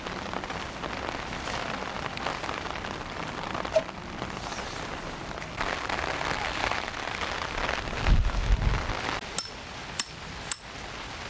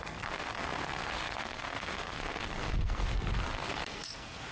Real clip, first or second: first